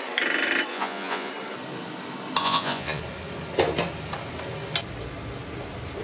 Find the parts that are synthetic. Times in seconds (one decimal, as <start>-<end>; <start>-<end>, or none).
0.7-1.3; 2.4-3.0